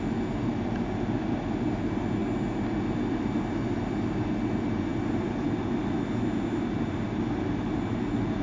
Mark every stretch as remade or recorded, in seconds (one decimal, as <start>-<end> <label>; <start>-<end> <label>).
0.0-8.4 recorded